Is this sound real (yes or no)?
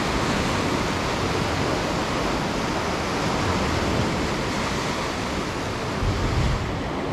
yes